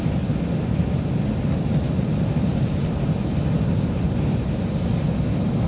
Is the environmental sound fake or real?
real